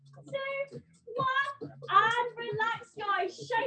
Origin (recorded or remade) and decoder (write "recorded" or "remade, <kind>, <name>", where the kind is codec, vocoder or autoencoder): recorded